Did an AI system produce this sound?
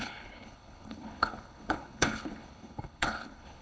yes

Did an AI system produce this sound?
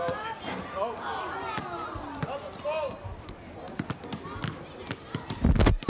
no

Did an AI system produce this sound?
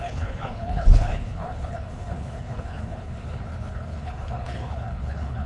yes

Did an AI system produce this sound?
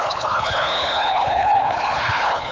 yes